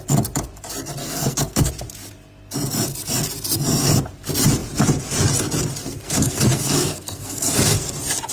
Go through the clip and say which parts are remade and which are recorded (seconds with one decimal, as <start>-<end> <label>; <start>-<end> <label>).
0.0-1.0 recorded; 1.0-1.7 remade; 1.7-5.8 recorded; 5.8-7.9 remade; 7.9-8.3 recorded